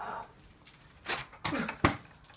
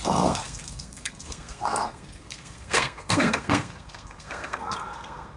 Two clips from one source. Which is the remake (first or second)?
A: second